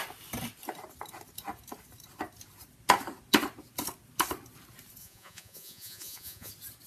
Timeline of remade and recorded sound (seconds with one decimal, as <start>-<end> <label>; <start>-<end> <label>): 0.0-5.0 recorded; 5.0-6.5 remade; 6.5-6.9 recorded